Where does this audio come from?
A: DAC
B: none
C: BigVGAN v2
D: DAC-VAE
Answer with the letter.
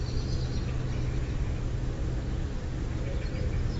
B